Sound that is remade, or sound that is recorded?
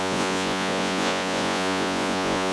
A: remade